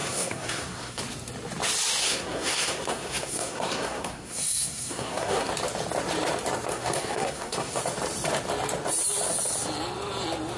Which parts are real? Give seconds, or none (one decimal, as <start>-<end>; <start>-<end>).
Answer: 1.0-2.0; 5.5-6.7; 7.8-10.6